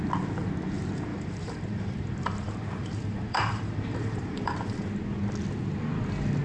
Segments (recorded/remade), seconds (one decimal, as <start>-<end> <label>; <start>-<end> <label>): 0.0-1.1 recorded; 1.1-4.9 remade; 4.9-6.4 recorded